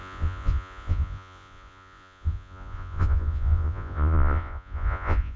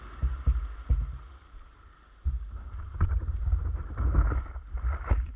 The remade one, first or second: first